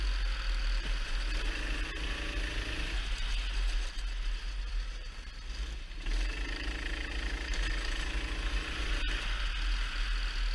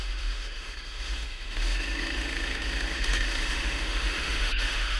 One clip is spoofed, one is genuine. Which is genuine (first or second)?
first